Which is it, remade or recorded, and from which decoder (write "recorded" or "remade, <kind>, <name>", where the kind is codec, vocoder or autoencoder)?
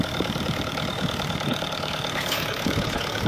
remade, codec, DAC